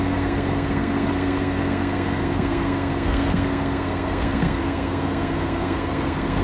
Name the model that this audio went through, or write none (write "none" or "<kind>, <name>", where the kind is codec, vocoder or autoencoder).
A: codec, SNAC